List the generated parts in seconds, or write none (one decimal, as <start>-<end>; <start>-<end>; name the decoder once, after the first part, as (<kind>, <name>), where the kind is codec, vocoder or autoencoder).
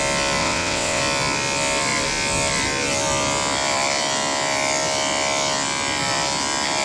0.4-1.0 (vocoder, WaveNeXt)